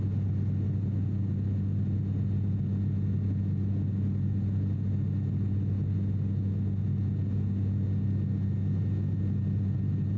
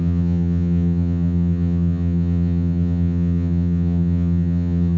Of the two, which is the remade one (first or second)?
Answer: second